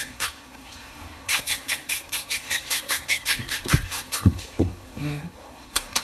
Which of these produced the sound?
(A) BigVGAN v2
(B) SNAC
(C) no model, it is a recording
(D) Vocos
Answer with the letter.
B